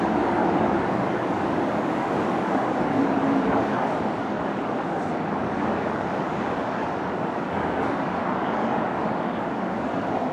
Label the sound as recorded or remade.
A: remade